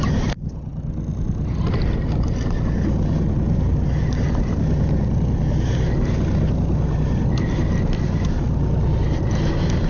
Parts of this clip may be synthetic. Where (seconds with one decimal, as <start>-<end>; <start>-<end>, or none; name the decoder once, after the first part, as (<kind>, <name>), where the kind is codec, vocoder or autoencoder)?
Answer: none

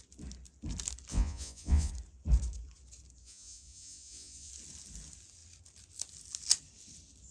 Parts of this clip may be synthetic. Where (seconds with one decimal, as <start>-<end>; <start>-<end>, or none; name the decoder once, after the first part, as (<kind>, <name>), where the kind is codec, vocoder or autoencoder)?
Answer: 1.1-1.9 (vocoder, Vocos); 3.2-4.5